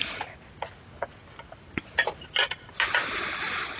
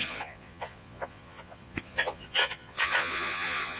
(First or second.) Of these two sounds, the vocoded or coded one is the second